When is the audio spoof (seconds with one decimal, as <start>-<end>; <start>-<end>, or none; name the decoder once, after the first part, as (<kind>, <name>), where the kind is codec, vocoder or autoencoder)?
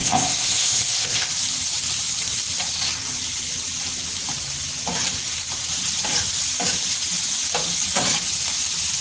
0.0-1.3 (codec, ZipCodec)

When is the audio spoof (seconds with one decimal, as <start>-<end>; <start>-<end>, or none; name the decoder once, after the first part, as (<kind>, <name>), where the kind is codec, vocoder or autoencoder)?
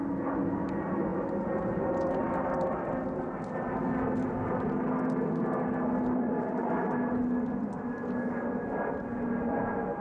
6.2-6.7 (vocoder, Vocos)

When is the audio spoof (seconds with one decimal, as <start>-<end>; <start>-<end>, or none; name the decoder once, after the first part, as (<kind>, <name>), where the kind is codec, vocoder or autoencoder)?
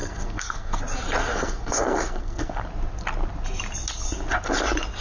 0.0-0.8 (codec, SNAC); 1.3-2.6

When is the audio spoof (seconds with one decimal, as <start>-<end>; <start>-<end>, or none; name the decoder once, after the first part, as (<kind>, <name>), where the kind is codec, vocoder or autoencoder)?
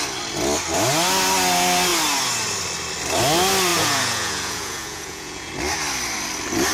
3.7-5.5 (vocoder, Vocos)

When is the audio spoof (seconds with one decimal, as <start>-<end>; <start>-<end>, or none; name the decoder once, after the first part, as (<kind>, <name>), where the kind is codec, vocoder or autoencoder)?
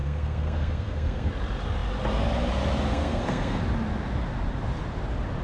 0.0-1.3 (codec, SNAC); 2.9-3.6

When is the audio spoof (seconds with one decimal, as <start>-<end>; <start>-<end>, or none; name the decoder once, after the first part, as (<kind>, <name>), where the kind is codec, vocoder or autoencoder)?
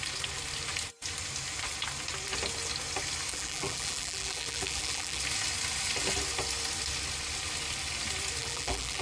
3.3-5.2 (vocoder, BigVGAN v2); 8.4-9.0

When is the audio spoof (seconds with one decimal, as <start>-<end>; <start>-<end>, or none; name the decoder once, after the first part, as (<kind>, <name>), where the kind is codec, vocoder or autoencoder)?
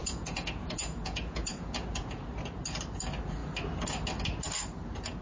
0.0-2.2 (vocoder, Vocos)